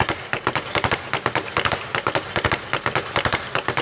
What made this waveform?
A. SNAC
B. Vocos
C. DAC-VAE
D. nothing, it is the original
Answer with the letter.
D